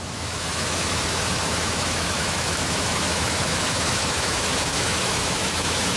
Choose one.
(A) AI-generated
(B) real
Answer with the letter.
A